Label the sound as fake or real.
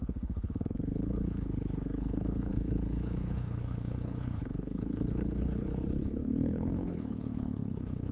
fake